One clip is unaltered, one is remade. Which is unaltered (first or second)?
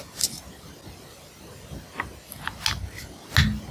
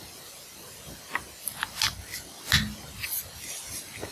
first